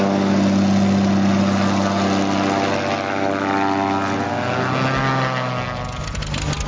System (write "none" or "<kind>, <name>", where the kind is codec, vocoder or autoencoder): none